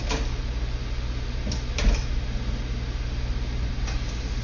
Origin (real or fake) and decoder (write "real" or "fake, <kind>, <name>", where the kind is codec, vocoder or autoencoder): real